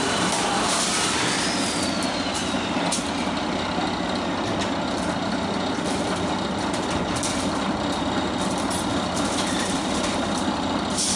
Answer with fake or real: real